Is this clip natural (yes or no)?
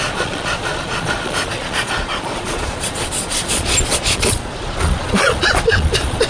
no